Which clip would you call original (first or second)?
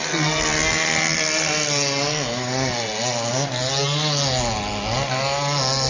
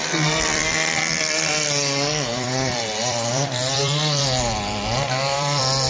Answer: first